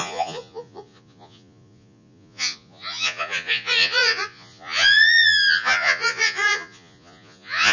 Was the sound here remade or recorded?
remade